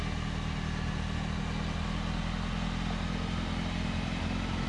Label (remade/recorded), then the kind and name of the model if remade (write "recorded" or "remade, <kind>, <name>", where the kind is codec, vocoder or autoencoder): recorded